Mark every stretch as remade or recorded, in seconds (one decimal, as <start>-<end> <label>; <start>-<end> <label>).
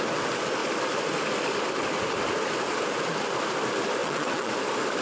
0.0-4.0 recorded; 4.0-4.5 remade; 4.5-5.0 recorded